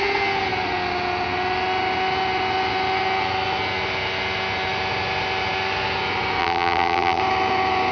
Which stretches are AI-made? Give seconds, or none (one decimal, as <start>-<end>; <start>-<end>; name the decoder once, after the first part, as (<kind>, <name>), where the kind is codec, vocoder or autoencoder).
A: 6.4-7.2 (vocoder, BigVGAN v2)